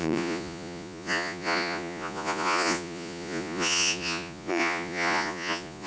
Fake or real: fake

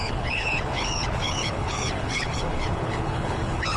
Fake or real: fake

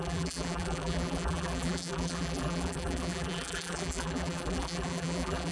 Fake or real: fake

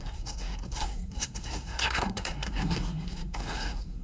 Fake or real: fake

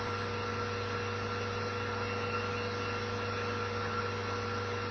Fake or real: real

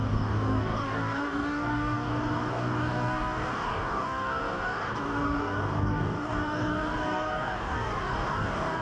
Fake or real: fake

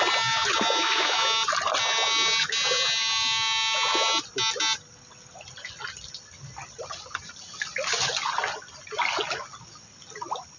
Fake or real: real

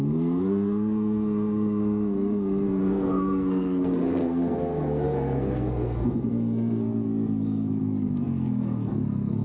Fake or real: fake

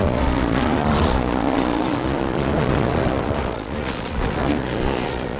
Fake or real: fake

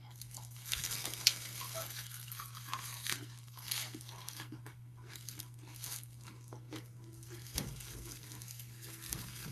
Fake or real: fake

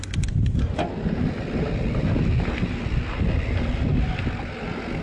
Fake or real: real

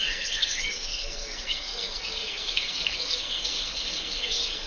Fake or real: fake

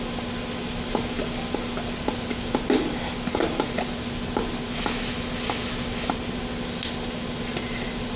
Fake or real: real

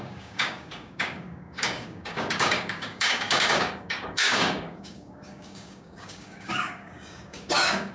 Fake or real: fake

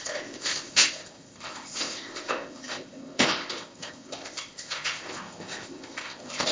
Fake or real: fake